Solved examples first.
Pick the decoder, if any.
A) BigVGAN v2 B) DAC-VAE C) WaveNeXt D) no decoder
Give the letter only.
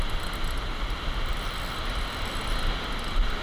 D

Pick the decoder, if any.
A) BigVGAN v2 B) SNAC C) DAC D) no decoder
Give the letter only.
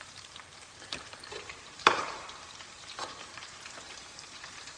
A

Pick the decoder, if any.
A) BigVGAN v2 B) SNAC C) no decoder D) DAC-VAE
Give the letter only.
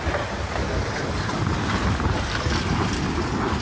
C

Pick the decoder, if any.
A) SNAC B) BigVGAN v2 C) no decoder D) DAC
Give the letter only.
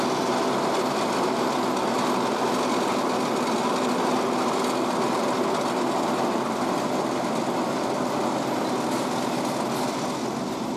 C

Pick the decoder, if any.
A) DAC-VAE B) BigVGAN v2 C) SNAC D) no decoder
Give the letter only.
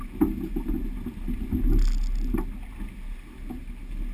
D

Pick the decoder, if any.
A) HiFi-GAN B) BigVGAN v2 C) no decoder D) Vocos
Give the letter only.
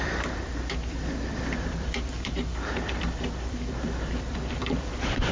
B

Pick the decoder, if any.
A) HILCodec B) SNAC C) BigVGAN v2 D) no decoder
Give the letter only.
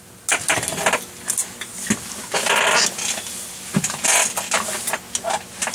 D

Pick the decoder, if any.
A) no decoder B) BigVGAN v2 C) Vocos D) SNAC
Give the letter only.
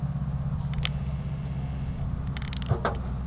A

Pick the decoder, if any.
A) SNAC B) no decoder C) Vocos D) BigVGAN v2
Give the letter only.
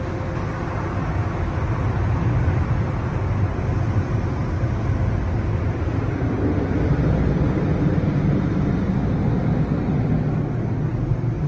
B